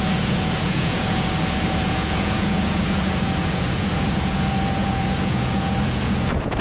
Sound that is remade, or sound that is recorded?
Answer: remade